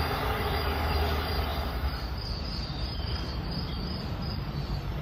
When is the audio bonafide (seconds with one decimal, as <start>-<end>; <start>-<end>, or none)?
0.0-5.0